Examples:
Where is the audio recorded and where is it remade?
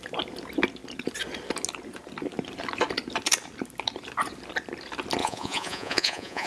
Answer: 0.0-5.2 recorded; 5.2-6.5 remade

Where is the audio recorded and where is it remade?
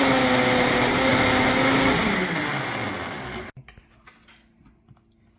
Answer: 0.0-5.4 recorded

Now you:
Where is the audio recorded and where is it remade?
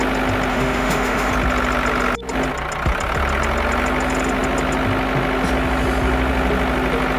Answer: 0.0-0.5 recorded; 0.5-1.3 remade; 1.3-7.2 recorded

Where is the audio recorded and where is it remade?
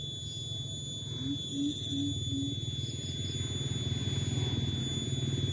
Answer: 0.0-5.5 recorded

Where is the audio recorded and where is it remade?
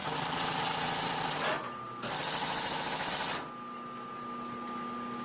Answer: 0.0-2.4 recorded; 2.4-3.1 remade; 3.1-5.2 recorded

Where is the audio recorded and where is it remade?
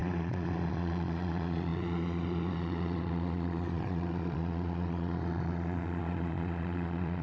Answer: 0.0-7.2 remade